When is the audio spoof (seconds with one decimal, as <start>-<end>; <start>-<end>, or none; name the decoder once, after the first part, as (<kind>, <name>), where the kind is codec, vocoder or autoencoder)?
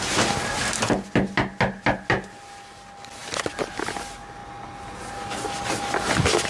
none